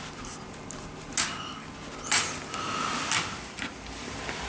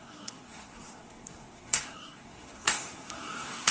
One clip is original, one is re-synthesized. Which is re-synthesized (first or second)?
second